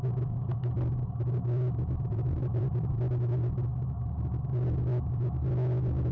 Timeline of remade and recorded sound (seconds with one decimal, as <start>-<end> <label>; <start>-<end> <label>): 0.0-2.1 recorded; 2.1-2.9 remade; 2.9-6.1 recorded